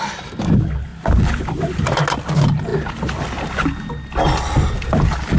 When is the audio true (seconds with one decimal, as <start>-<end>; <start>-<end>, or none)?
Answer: 0.0-5.4